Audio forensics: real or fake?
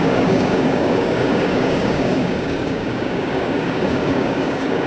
fake